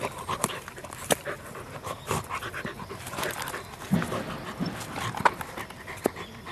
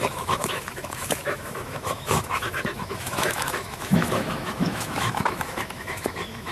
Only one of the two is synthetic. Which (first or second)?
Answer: second